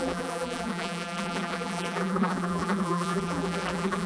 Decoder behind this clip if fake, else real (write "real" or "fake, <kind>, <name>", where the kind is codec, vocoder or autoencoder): fake, vocoder, BigVGAN v2